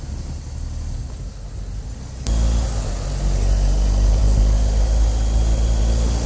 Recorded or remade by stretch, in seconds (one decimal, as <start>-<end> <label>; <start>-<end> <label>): 0.0-6.3 recorded